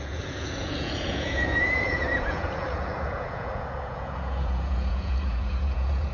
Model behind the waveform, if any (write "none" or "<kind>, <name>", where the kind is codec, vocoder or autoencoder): vocoder, Vocos